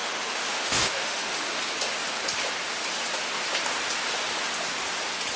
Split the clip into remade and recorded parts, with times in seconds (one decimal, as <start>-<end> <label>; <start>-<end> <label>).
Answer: 0.0-1.6 remade; 1.6-5.4 recorded